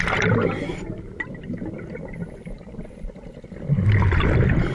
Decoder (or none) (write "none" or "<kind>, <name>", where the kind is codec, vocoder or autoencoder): none